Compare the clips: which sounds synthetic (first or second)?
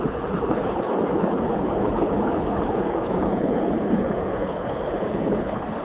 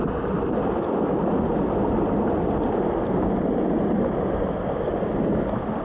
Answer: first